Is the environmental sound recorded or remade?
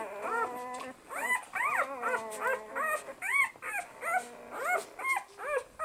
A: recorded